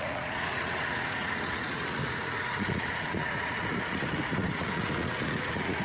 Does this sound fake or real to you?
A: fake